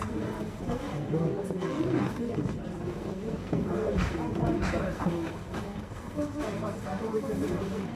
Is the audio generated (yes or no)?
yes